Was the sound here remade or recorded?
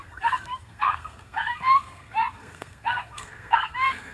remade